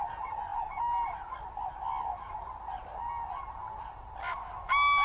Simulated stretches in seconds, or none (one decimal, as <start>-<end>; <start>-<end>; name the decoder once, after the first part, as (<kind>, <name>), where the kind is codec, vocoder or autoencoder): none